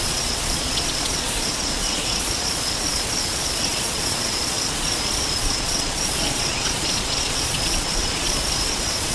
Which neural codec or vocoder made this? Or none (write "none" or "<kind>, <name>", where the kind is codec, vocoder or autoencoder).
vocoder, Vocos